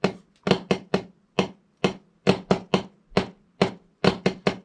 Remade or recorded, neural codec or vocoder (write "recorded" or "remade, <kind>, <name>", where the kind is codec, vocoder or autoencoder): recorded